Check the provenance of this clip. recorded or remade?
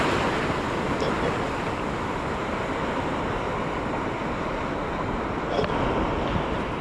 recorded